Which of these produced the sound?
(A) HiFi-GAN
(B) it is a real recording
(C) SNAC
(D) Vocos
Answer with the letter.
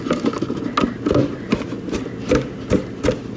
B